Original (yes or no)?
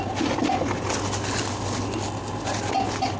yes